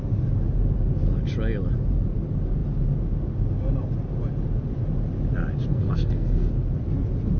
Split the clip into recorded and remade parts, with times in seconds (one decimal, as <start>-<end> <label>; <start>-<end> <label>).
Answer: 0.0-5.7 recorded; 5.7-6.5 remade; 6.5-7.4 recorded